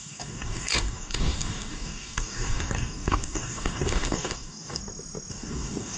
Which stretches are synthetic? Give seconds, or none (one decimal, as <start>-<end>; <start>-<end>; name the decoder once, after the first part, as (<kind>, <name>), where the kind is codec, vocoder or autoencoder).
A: 0.0-4.8 (codec, DAC); 5.3-6.0